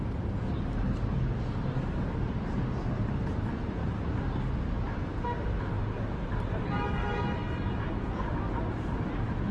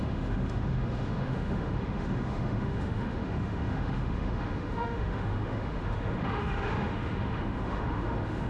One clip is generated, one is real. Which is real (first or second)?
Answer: first